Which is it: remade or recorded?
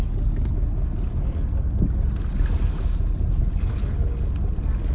recorded